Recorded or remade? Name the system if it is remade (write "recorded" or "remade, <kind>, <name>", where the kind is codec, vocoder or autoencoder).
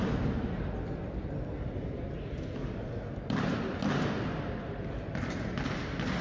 recorded